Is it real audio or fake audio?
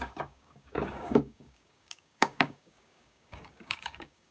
fake